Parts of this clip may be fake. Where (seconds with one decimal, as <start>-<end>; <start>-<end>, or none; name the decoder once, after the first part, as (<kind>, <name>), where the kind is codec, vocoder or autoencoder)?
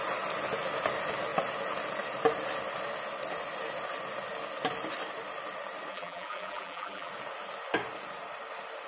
5.9-7.1 (vocoder, BigVGAN v2)